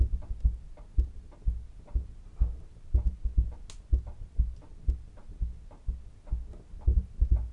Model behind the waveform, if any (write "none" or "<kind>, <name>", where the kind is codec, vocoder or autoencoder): none